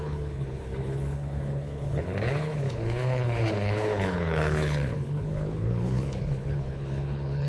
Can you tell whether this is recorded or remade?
remade